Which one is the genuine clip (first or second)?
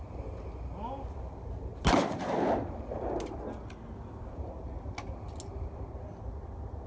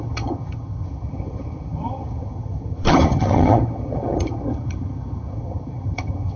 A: first